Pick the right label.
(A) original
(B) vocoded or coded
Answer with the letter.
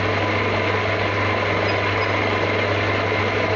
A